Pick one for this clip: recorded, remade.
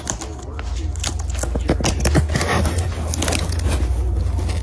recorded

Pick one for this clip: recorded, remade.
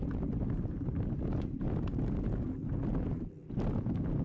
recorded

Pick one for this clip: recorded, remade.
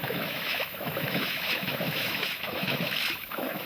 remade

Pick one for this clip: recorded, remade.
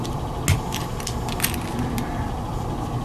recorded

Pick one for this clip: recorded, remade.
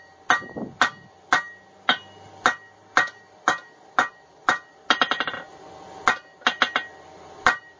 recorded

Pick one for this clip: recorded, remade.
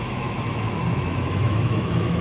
remade